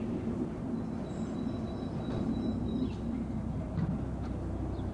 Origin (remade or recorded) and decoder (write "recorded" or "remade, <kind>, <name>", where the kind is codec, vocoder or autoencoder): recorded